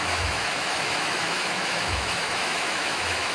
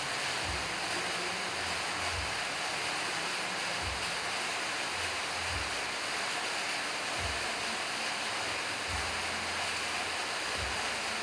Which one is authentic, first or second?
second